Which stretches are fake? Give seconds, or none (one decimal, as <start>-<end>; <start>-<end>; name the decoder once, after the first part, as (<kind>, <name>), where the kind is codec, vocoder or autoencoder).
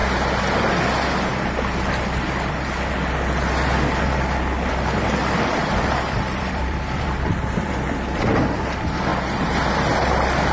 5.2-8.4 (vocoder, BigVGAN v2); 9.1-9.7